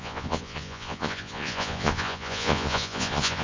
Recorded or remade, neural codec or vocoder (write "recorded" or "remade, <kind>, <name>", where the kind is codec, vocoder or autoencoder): remade, vocoder, Vocos